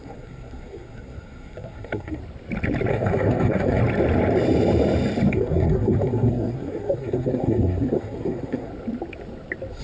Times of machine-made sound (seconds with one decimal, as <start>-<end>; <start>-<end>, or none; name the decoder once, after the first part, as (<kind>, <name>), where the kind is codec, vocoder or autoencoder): 0.0-2.2 (codec, SNAC); 2.9-3.8; 5.3-8.7